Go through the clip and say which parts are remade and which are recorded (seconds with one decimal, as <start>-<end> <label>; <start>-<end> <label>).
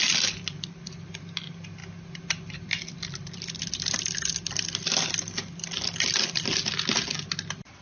0.0-7.8 recorded